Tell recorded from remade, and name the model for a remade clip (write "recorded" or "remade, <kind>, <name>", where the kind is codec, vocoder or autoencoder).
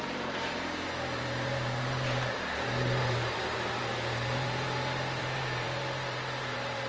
remade, vocoder, BigVGAN v2